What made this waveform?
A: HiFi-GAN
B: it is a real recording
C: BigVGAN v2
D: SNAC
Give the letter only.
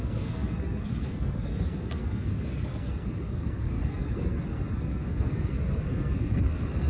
D